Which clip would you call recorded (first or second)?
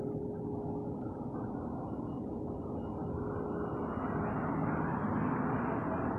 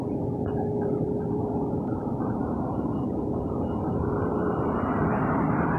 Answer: first